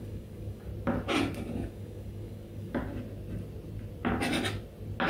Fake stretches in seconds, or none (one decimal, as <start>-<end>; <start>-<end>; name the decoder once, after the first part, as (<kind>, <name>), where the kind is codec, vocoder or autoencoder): 0.0-0.7 (codec, DAC); 1.5-2.8